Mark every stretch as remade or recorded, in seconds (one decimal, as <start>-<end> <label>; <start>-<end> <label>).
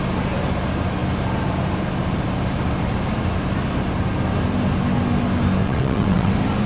0.0-5.6 recorded; 5.6-6.3 remade; 6.3-6.7 recorded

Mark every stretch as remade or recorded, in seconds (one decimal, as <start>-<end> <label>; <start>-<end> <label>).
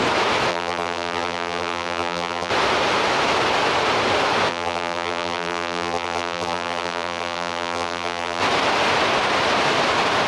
0.0-0.5 recorded; 0.5-2.5 remade; 2.5-4.5 recorded; 4.5-8.4 remade; 8.4-10.3 recorded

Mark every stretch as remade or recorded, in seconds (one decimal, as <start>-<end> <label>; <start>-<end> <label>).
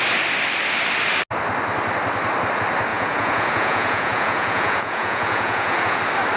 0.0-2.9 recorded; 2.9-6.0 remade; 6.0-6.4 recorded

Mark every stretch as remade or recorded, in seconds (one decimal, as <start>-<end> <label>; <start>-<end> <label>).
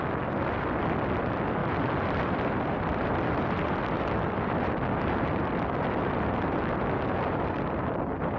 0.0-8.4 recorded